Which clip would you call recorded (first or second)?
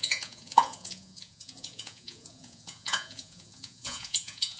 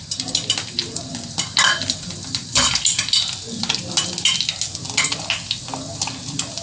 second